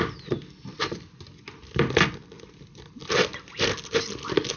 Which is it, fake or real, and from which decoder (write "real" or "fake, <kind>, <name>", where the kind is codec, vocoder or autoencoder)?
real